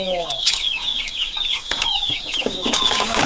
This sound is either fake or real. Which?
fake